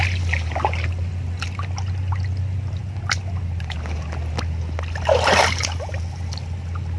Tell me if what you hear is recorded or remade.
recorded